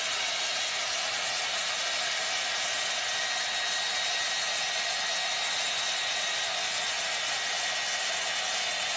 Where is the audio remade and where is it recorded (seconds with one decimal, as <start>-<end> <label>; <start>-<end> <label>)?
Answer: 0.0-9.0 recorded